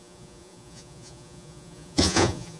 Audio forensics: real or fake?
fake